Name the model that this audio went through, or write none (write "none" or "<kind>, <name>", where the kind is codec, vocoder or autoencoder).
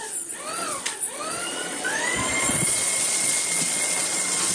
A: vocoder, Vocos